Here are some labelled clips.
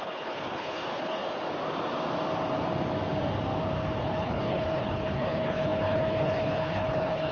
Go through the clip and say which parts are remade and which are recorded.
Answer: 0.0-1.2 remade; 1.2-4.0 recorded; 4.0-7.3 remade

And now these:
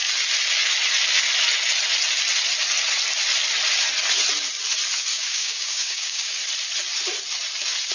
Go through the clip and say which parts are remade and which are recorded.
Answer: 0.0-5.1 recorded; 5.1-6.4 remade; 6.4-7.9 recorded

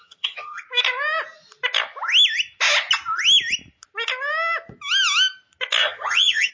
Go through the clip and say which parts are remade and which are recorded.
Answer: 0.0-0.6 remade; 0.6-5.8 recorded; 5.8-6.5 remade

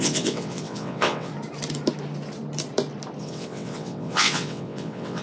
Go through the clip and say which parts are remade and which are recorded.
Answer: 0.0-1.3 remade; 1.3-3.2 recorded; 3.2-5.2 remade

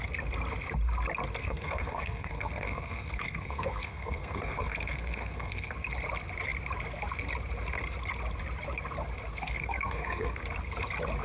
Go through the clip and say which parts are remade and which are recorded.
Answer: 0.0-1.4 recorded; 1.4-5.7 remade; 5.7-9.3 recorded; 9.3-10.4 remade; 10.4-11.2 recorded

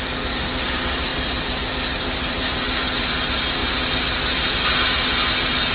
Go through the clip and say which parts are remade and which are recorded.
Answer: 0.0-5.7 recorded